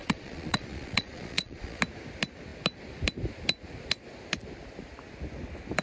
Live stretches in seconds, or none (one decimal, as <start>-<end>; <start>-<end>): 1.8-5.8